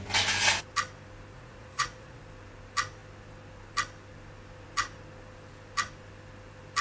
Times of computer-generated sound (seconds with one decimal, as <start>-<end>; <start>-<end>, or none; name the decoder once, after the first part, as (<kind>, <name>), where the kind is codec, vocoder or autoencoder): 1.3-2.2 (vocoder, Vocos)